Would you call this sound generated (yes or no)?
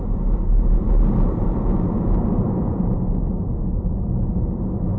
no